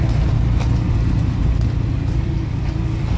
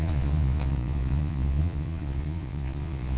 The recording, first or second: first